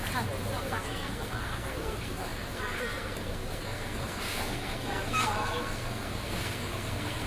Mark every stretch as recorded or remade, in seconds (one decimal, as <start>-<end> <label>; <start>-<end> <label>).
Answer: 0.0-0.6 recorded; 0.6-7.3 remade